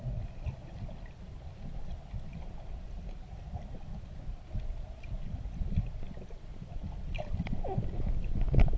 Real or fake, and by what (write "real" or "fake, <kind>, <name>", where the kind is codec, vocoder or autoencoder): real